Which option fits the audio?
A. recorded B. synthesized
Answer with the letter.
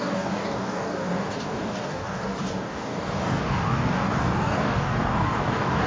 B